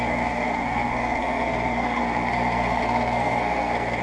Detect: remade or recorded remade